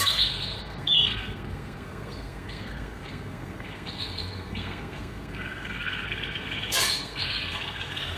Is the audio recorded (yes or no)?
no